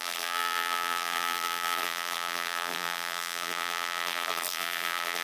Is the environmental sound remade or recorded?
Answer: remade